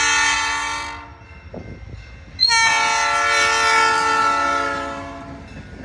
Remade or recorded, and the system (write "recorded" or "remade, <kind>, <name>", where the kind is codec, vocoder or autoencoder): recorded